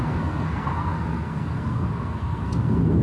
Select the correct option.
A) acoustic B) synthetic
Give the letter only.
B